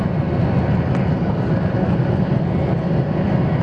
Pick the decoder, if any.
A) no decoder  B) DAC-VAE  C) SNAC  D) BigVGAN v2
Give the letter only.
A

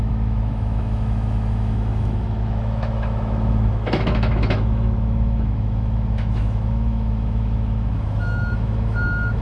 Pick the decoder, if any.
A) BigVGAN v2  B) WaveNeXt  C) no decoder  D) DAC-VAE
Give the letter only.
D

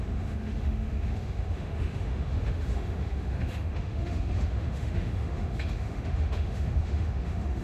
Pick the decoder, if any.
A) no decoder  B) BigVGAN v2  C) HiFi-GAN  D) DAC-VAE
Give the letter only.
D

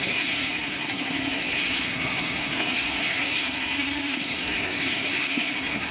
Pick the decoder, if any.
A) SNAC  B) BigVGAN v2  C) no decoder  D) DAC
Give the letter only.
A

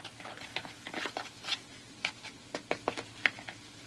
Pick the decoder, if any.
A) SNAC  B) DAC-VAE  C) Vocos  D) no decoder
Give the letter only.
D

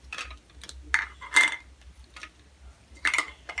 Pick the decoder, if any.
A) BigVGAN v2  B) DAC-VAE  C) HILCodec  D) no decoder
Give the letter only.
D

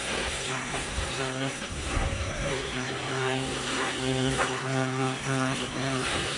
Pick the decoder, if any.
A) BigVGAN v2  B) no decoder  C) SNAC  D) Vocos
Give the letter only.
C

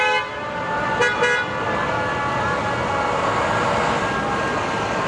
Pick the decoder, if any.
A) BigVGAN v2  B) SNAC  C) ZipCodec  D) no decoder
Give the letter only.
D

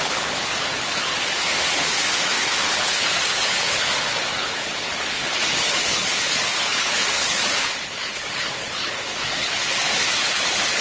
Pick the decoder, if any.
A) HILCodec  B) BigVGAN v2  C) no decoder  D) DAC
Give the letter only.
A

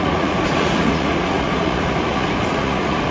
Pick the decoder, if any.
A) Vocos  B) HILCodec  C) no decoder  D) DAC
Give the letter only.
A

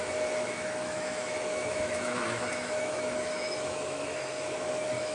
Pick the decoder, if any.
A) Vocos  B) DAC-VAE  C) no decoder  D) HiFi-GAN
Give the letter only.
B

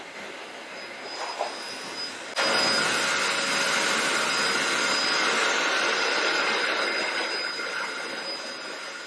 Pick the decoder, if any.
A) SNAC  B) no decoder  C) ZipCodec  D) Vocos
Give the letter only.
B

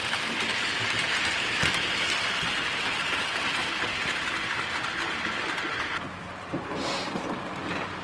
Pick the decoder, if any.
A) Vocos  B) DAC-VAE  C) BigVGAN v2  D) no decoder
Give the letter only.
C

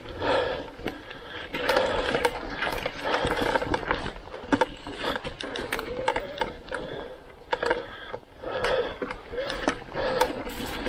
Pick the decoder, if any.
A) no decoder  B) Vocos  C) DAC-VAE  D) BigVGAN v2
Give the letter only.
A